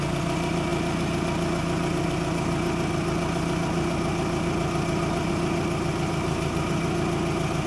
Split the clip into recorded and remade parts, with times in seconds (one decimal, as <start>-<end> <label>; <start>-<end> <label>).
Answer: 0.0-7.7 recorded